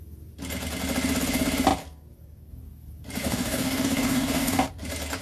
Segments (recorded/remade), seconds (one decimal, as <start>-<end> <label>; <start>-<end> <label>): 0.0-3.2 recorded; 3.2-4.7 remade; 4.7-5.2 recorded